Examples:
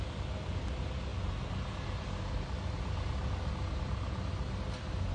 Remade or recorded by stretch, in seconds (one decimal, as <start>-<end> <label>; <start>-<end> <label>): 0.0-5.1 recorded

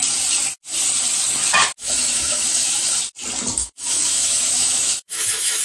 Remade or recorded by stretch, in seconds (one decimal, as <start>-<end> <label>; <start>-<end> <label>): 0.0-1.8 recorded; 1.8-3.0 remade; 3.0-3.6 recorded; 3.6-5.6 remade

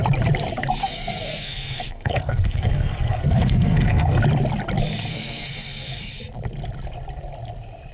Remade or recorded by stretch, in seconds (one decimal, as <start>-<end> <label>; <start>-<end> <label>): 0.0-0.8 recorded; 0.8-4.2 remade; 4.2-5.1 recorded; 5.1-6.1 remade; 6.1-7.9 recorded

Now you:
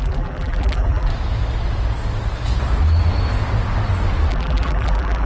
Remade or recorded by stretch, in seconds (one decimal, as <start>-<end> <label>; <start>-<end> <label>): 0.0-1.1 remade; 1.1-4.3 recorded; 4.3-5.3 remade

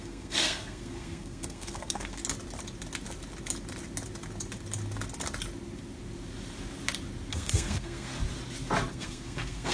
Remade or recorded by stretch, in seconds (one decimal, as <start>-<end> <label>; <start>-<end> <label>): 0.0-2.2 remade; 2.2-7.3 recorded; 7.3-8.1 remade; 8.1-8.9 recorded; 8.9-9.7 remade

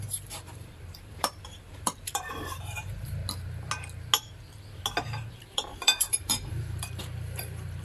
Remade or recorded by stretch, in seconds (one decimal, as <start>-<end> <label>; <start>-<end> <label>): 0.0-3.2 remade; 3.2-5.3 recorded; 5.3-7.8 remade

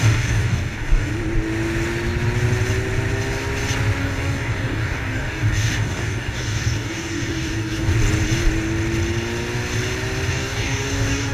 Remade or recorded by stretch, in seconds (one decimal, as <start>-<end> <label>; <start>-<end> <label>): 0.0-1.1 remade; 1.1-4.0 recorded; 4.0-7.9 remade; 7.9-10.3 recorded; 10.3-11.3 remade

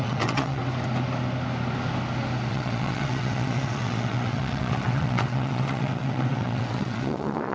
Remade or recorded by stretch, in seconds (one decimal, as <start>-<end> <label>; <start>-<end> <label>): 0.0-0.6 remade; 0.6-2.5 recorded; 2.5-7.5 remade